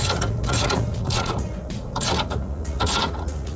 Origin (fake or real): fake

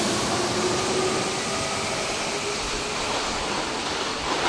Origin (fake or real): real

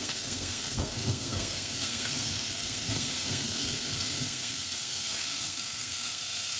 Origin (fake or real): fake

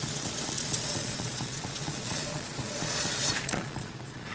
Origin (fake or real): fake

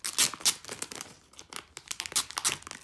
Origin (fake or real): real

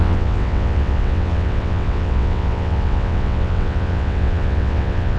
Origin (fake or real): fake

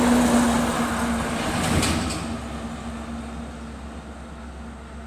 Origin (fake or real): real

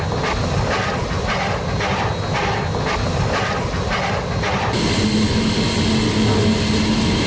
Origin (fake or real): real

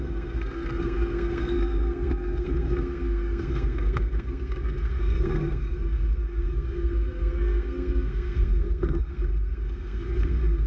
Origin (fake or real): fake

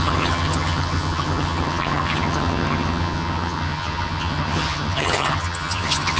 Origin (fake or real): fake